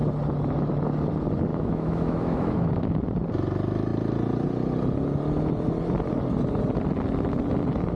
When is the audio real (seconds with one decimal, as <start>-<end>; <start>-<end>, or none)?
0.0-1.5; 2.7-8.0